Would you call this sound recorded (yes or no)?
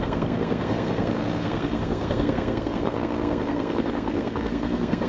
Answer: no